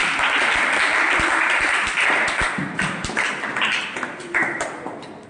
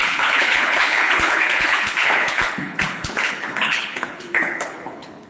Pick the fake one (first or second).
second